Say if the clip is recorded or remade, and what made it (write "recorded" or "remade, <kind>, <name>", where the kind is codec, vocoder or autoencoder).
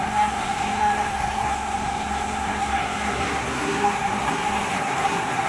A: remade, codec, SNAC